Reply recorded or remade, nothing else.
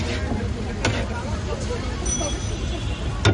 recorded